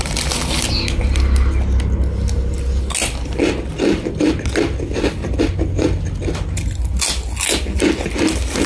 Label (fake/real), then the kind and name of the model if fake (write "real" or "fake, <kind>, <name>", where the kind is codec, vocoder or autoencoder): real